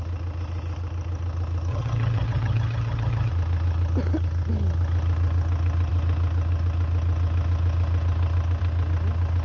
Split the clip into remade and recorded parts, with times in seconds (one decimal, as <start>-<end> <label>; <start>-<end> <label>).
0.0-1.7 recorded; 1.7-3.3 remade; 3.3-9.4 recorded